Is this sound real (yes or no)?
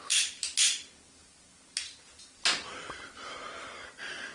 yes